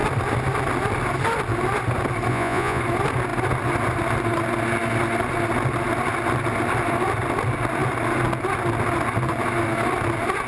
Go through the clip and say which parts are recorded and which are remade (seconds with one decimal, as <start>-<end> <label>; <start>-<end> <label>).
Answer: 0.0-2.3 recorded; 2.3-2.8 remade; 2.8-10.5 recorded